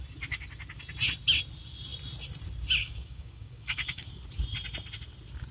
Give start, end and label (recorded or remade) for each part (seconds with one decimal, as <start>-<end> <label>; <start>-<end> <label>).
0.0-2.8 recorded; 2.8-4.1 remade; 4.1-5.5 recorded

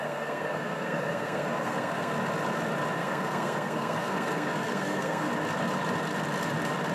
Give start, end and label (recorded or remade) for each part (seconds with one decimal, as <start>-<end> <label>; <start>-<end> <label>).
0.0-2.1 remade; 2.1-3.0 recorded; 3.0-5.3 remade; 5.3-6.9 recorded